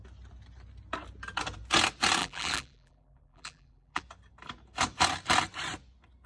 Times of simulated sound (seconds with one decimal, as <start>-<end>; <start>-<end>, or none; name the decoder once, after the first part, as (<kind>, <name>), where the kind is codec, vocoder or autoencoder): 2.2-4.0 (vocoder, BigVGAN v2)